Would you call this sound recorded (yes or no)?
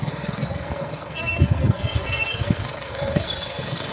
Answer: no